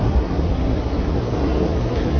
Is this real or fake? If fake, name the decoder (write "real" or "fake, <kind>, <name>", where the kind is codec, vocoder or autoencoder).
fake, codec, SNAC